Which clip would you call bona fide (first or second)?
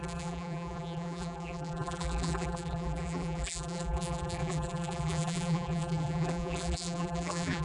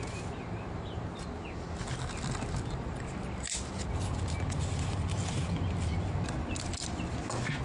second